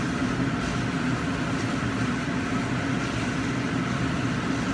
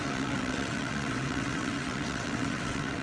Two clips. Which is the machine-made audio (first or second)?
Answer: second